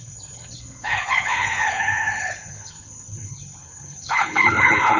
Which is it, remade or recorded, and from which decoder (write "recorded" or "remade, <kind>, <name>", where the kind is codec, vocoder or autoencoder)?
remade, codec, HILCodec